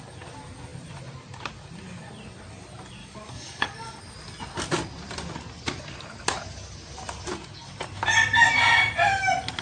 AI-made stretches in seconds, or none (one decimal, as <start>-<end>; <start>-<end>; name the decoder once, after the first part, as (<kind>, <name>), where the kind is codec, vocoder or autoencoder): 3.0-4.0 (codec, DAC)